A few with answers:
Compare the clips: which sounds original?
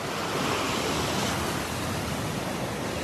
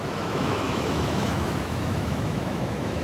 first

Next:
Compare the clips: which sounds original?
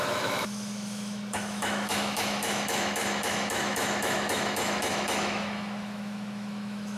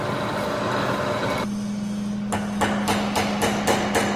second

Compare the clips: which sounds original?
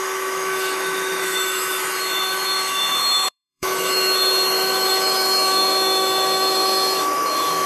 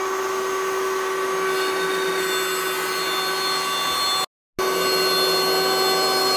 second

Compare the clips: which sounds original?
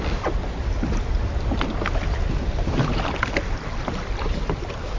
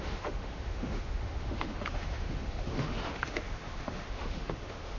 first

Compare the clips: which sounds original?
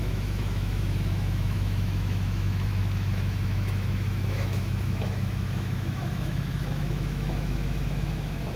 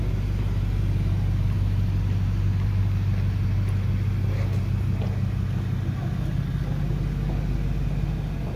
second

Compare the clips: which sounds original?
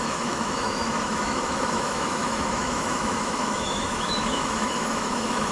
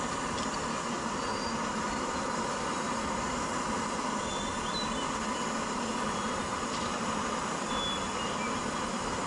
second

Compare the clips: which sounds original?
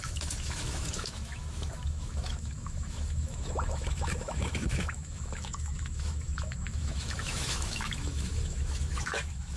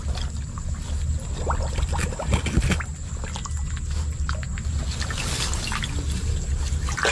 second